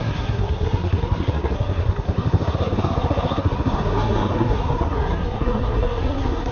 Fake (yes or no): yes